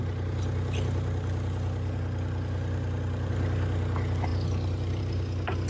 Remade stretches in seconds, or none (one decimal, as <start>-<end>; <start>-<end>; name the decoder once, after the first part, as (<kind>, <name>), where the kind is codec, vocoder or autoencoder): none